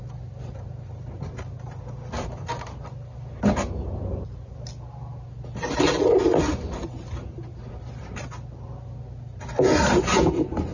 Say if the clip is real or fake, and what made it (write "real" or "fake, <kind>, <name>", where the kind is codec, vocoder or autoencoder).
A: real